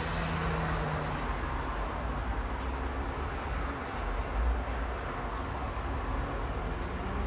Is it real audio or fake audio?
real